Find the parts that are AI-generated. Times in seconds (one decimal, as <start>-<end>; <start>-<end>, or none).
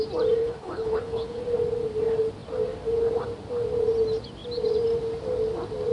0.4-1.4